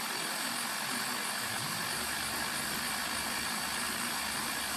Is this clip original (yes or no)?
yes